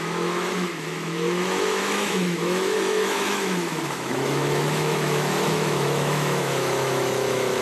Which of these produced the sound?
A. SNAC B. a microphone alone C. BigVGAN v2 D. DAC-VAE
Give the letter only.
D